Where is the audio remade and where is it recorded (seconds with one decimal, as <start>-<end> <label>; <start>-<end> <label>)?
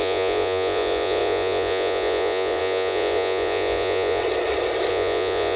0.0-4.2 remade; 4.2-4.9 recorded; 4.9-5.6 remade